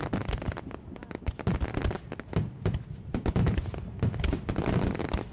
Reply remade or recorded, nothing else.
recorded